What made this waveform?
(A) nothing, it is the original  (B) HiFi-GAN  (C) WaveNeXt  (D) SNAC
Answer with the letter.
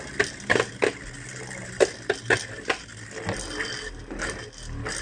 A